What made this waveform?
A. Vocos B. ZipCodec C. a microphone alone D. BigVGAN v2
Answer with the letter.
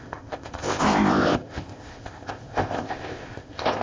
B